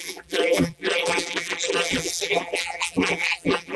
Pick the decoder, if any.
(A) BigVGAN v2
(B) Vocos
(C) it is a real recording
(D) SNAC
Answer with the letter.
A